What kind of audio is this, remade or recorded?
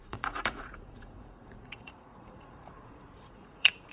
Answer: remade